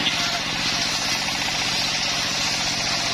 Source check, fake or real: real